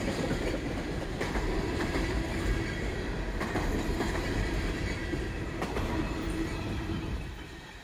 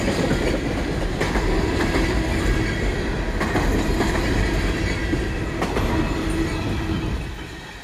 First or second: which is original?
second